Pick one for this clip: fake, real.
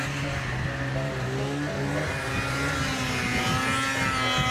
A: real